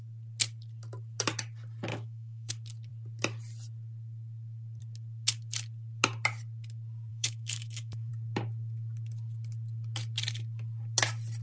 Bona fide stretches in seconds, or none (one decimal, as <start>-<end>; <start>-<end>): 0.0-1.9; 2.5-7.1; 8.1-11.4